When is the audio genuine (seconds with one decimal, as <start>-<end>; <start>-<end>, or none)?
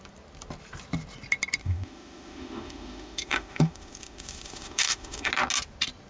0.0-1.6; 5.3-6.1